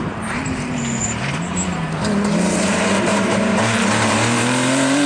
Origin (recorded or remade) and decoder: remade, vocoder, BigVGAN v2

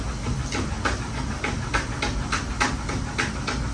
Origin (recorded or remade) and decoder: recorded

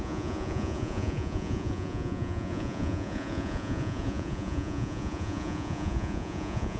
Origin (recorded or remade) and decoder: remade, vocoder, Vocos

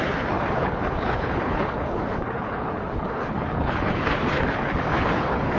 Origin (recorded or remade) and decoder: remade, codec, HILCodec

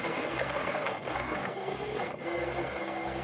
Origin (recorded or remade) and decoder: remade, codec, SNAC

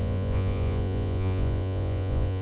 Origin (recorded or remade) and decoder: remade, vocoder, Vocos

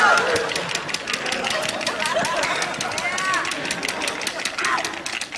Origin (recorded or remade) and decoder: recorded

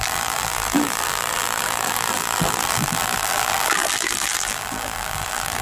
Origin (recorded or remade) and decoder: remade, vocoder, BigVGAN v2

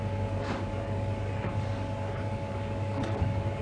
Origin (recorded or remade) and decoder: remade, codec, DAC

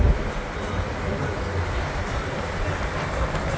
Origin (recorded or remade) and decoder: recorded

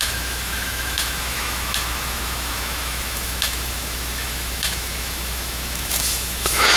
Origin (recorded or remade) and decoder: remade, autoencoder, DAC-VAE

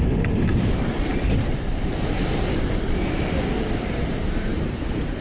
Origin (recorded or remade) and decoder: remade, vocoder, BigVGAN v2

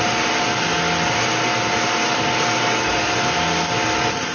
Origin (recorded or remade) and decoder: recorded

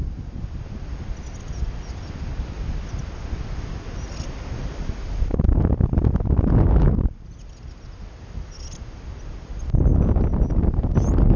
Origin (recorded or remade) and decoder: recorded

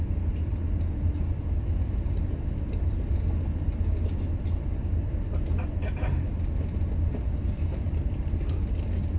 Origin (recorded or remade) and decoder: recorded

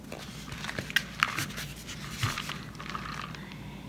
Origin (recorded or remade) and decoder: recorded